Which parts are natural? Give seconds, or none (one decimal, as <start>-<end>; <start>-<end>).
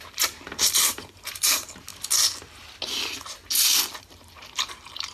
1.9-4.0